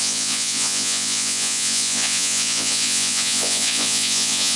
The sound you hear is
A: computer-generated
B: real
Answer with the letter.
A